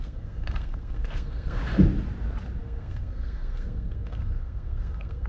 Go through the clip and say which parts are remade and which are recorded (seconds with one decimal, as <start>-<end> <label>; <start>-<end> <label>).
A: 0.0-1.6 remade; 1.6-2.6 recorded; 2.6-5.3 remade